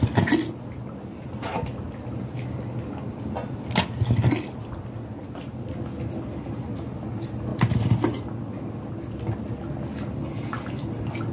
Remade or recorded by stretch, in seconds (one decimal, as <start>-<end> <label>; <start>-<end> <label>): 0.0-11.3 recorded